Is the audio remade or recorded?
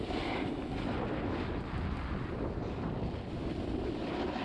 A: recorded